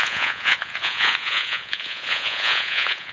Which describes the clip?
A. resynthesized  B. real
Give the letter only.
A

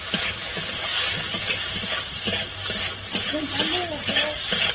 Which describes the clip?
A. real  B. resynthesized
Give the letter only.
A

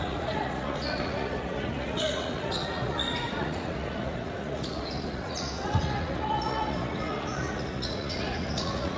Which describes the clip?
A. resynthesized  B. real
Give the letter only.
A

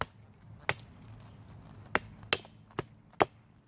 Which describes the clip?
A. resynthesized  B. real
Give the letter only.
B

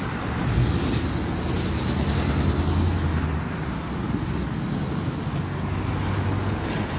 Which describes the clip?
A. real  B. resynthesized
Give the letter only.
A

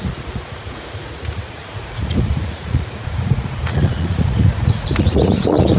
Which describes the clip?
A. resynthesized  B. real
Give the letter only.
A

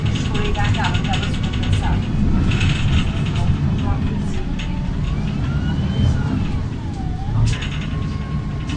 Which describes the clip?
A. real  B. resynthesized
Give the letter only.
A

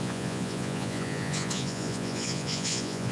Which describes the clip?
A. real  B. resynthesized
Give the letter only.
B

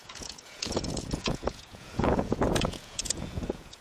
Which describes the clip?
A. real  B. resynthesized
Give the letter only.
B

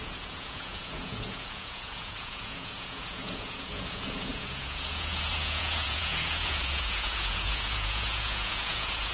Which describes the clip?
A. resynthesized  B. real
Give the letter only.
A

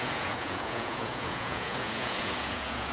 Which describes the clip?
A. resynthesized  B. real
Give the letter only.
A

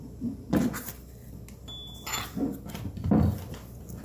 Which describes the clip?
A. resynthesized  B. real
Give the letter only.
B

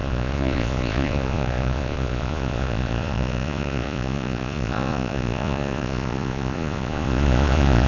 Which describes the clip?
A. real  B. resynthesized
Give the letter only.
B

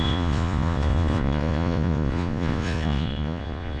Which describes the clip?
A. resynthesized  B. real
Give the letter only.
A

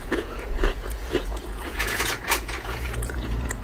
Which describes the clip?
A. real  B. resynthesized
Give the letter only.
B